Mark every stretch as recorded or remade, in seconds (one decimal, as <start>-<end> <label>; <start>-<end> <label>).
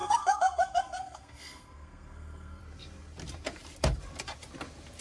0.0-2.6 remade; 2.6-5.0 recorded